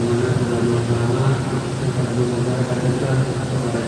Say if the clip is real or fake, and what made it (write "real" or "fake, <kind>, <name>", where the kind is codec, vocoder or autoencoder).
real